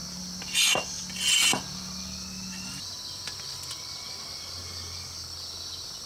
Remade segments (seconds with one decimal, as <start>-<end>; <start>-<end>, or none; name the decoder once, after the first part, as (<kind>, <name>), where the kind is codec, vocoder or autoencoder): none